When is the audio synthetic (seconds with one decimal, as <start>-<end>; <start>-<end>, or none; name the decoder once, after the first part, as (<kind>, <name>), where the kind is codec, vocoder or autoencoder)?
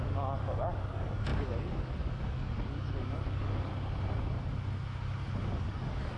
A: 0.0-3.7 (codec, DAC); 5.6-6.2